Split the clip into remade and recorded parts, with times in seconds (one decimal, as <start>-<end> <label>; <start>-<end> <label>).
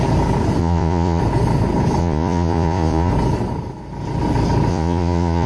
0.0-0.6 recorded; 0.6-1.2 remade; 1.2-2.0 recorded; 2.0-3.1 remade; 3.1-4.7 recorded; 4.7-5.5 remade